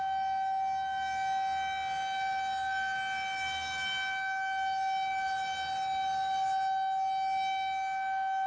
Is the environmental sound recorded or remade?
recorded